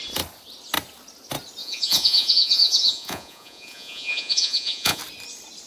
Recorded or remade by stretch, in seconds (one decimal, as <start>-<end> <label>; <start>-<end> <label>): 0.0-1.6 recorded; 1.6-5.0 remade; 5.0-5.7 recorded